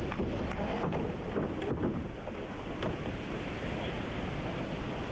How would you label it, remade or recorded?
recorded